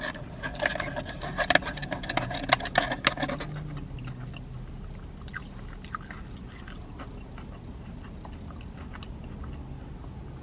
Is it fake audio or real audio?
real